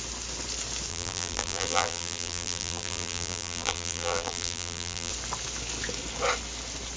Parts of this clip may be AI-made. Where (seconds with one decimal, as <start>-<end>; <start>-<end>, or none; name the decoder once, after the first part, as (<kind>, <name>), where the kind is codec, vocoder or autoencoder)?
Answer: 0.9-5.1 (vocoder, BigVGAN v2)